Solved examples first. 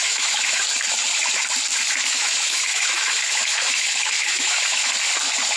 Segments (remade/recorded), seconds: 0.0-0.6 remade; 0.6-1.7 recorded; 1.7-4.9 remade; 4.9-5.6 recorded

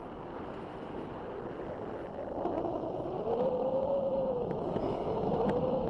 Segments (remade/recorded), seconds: 0.0-3.5 recorded; 3.5-5.9 remade

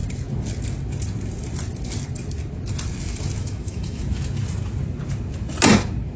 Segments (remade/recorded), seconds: 0.0-3.4 recorded; 3.4-4.0 remade; 4.0-6.2 recorded

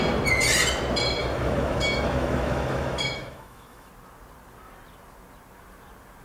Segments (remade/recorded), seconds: 0.0-1.2 recorded; 1.2-3.9 remade; 3.9-6.2 recorded

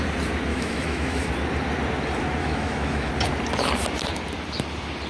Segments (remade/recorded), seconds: 0.0-0.5 recorded; 0.5-1.3 remade; 1.3-2.4 recorded; 2.4-3.1 remade; 3.1-5.1 recorded